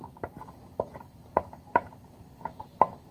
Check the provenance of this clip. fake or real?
fake